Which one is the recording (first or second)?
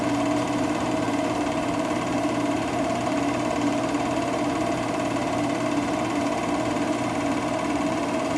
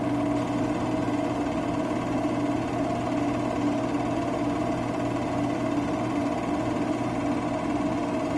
second